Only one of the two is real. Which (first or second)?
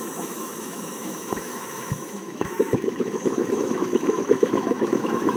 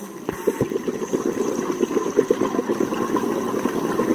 second